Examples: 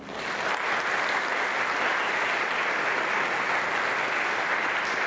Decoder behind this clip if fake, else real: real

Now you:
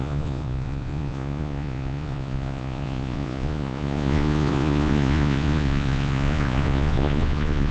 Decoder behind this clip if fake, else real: fake, vocoder, Vocos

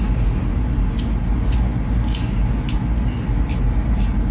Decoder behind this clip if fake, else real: real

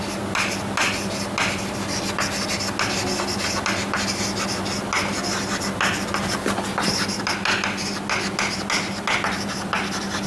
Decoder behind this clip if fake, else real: real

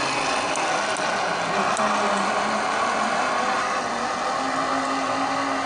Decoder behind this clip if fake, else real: real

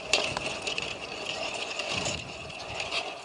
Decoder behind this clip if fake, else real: fake, vocoder, Vocos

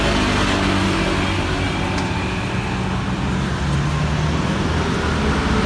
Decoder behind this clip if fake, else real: real